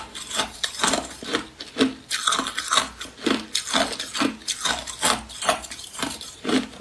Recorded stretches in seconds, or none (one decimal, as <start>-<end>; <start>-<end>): 1.3-5.4